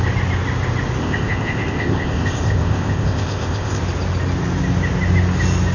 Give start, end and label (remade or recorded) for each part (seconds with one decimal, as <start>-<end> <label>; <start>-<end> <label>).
0.0-1.0 recorded; 1.0-3.8 remade; 3.8-5.7 recorded